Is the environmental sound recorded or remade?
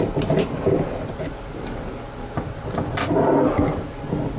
recorded